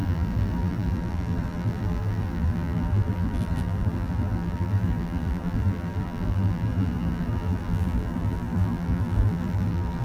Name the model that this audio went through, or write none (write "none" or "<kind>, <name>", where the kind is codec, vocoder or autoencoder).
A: vocoder, BigVGAN v2